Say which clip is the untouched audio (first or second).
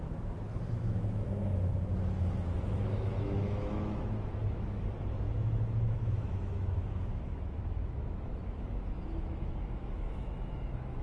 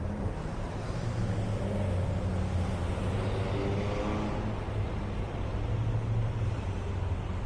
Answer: second